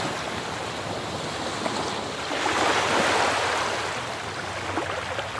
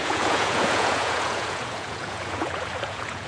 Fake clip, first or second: second